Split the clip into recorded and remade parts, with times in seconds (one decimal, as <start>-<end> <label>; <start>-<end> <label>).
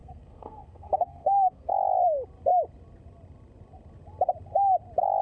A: 0.0-1.7 remade; 1.7-5.2 recorded